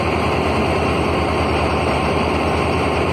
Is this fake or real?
fake